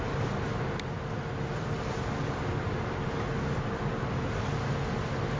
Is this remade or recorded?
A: recorded